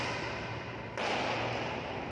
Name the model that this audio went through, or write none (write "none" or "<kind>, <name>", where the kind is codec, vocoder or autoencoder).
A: none